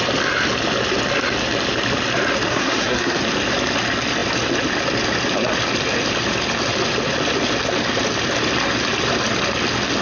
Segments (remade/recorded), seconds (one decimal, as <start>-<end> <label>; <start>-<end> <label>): 0.0-2.5 recorded; 2.5-3.2 remade; 3.2-10.0 recorded